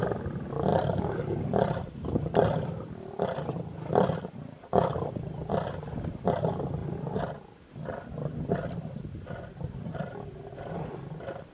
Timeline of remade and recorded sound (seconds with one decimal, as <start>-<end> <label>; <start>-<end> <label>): 0.0-0.7 recorded; 0.7-5.1 remade; 5.1-11.5 recorded